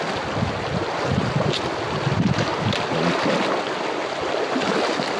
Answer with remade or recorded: recorded